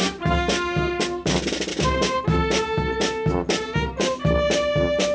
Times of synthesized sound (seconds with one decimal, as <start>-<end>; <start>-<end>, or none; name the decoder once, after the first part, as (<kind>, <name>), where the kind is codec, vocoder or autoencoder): 1.7-2.2 (codec, DAC)